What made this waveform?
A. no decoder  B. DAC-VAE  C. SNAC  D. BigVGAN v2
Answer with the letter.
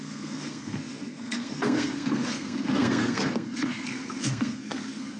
C